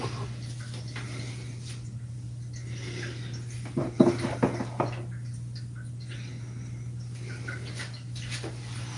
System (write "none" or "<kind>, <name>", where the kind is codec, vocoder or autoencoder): none